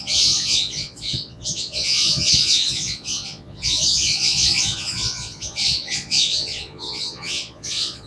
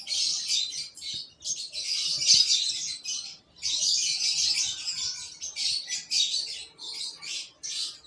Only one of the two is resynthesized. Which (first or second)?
first